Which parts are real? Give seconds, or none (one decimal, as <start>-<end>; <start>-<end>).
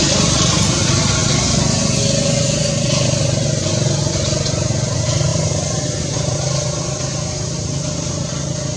0.0-5.3; 8.3-8.8